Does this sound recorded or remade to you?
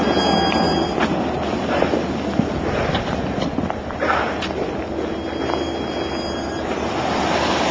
recorded